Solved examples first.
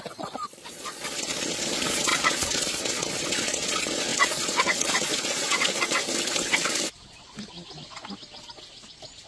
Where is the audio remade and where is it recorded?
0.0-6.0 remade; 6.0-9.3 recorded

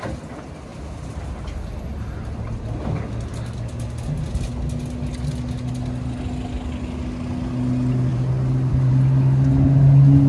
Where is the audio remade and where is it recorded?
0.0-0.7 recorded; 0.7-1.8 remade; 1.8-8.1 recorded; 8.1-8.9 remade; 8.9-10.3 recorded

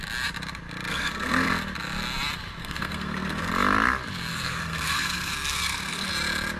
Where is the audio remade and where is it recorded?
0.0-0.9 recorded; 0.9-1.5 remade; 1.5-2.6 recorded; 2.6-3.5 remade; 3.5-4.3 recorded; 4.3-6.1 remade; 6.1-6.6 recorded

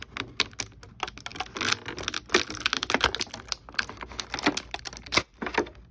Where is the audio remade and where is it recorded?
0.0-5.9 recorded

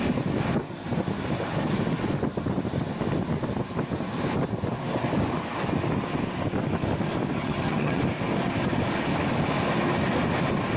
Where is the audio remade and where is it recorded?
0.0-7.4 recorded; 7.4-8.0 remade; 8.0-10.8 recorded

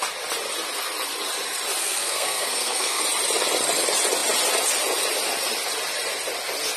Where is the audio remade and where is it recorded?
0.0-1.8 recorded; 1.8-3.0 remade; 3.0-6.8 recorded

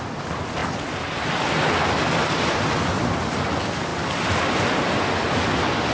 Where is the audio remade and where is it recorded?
0.0-5.9 recorded

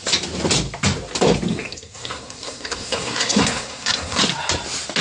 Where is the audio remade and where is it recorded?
0.0-1.5 recorded; 1.5-4.2 remade; 4.2-5.0 recorded